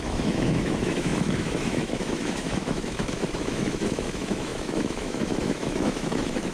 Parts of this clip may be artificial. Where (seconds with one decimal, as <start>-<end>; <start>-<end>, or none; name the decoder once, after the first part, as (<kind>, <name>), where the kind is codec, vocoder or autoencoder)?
0.0-6.5 (autoencoder, DAC-VAE)